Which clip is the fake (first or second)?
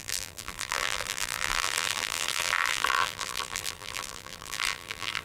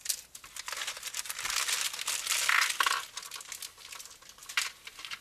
first